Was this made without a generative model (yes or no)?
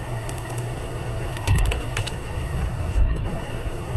no